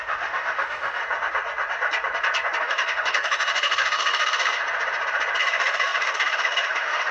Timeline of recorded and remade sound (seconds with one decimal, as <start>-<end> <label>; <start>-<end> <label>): 0.0-1.0 remade; 1.0-2.6 recorded; 2.6-4.6 remade; 4.6-5.4 recorded; 5.4-7.1 remade